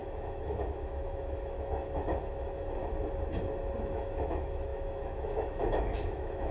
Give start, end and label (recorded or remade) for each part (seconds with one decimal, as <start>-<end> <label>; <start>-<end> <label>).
0.0-2.8 remade; 2.8-3.8 recorded; 3.8-6.5 remade